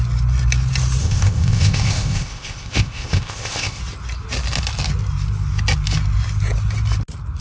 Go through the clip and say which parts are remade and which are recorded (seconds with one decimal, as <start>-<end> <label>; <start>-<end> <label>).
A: 0.0-1.0 recorded; 1.0-3.8 remade; 3.8-7.4 recorded